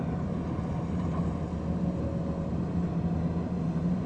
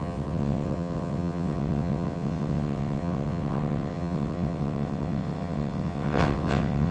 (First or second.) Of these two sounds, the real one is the first